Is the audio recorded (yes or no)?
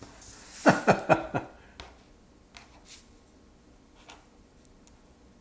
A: yes